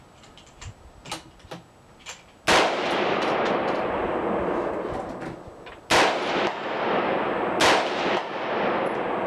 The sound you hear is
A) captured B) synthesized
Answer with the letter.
A